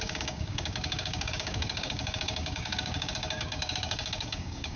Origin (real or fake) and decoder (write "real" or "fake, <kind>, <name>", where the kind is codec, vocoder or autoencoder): fake, codec, DAC